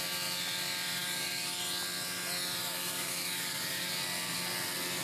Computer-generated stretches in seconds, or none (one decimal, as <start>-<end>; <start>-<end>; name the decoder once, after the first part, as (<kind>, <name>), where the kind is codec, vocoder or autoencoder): 1.0-1.6 (codec, DAC); 2.6-3.9